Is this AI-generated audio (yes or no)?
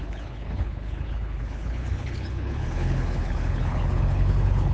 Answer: yes